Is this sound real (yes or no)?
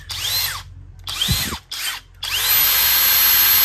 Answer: yes